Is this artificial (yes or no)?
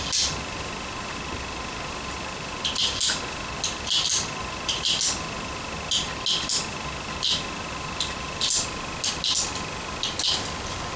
no